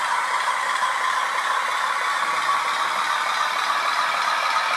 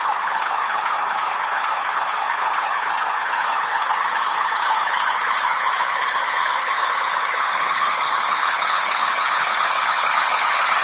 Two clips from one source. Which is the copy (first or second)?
second